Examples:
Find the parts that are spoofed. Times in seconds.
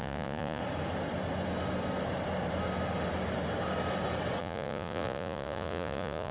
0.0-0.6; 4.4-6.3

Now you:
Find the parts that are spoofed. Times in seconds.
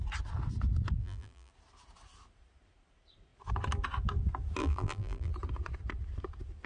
1.0-1.5; 4.6-5.3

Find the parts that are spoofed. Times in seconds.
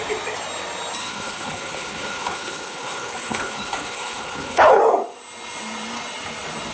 1.0-4.8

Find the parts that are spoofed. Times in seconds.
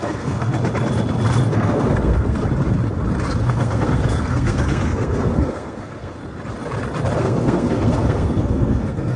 0.0-0.5; 1.5-2.4; 3.4-6.2; 7.2-9.2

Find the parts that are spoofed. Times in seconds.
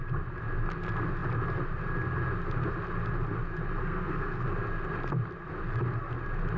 3.8-4.4